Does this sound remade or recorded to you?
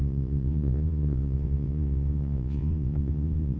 remade